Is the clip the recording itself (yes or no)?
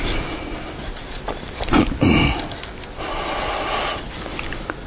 yes